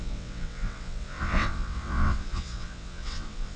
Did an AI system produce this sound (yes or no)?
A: yes